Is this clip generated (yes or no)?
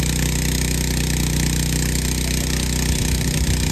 no